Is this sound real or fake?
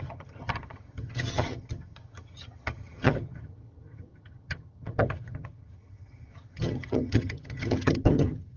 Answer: fake